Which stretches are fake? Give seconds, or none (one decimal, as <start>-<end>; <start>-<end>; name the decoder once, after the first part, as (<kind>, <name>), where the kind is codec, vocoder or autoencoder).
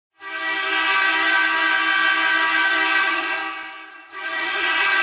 3.0-3.4 (vocoder, Vocos); 3.9-5.0